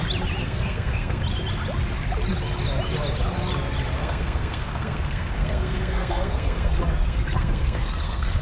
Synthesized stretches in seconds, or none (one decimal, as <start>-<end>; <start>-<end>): 0.4-1.2; 4.0-8.4